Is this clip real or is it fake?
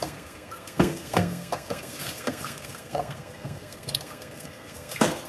fake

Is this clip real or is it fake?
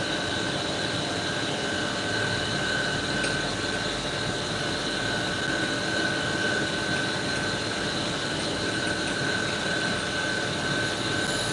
real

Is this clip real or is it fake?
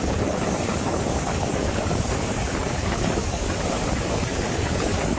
fake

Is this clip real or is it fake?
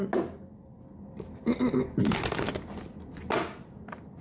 real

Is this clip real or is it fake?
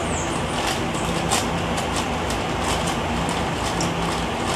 real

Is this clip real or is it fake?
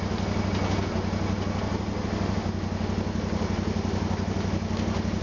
real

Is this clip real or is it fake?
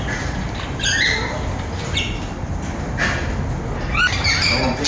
real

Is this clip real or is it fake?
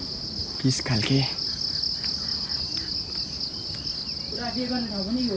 real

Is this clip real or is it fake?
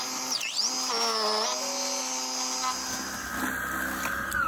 real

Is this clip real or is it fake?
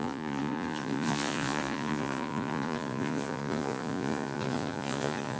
fake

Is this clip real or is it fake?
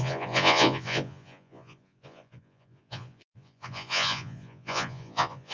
fake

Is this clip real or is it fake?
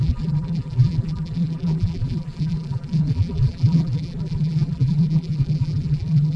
fake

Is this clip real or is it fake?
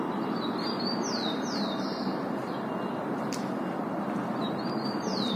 fake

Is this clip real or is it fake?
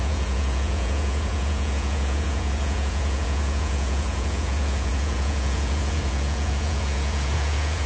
fake